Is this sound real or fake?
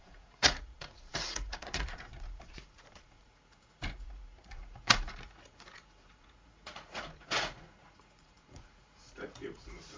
fake